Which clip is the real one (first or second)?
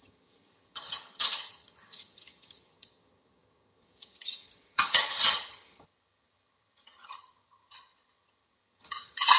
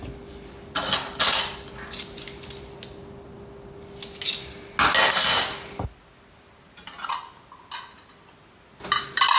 second